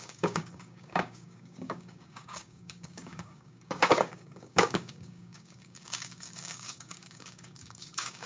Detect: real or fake fake